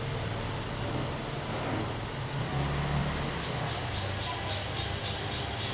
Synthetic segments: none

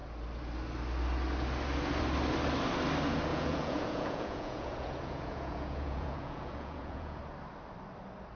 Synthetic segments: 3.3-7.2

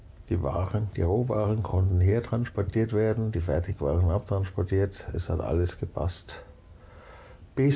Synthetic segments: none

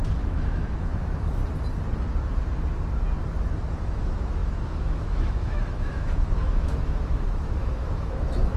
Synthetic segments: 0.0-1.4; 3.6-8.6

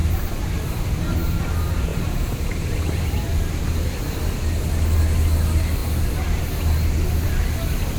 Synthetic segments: 0.0-1.4; 1.9-2.8